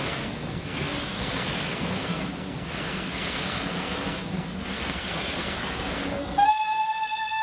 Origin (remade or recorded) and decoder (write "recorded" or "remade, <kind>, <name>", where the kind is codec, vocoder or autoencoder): remade, codec, SNAC